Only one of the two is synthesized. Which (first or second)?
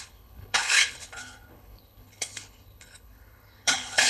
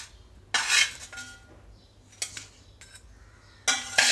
first